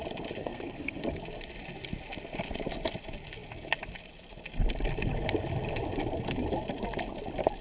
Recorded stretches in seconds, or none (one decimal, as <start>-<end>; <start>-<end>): 0.0-0.4; 1.0-7.6